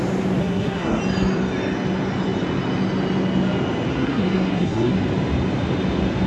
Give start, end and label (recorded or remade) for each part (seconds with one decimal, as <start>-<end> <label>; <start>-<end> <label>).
0.0-0.4 recorded; 0.4-1.0 remade; 1.0-3.9 recorded; 3.9-4.9 remade; 4.9-6.3 recorded